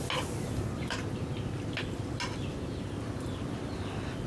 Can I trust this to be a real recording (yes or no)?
yes